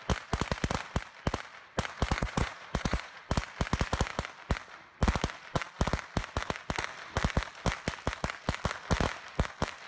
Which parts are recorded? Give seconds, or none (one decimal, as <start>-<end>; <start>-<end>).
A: 0.0-2.2; 3.2-9.9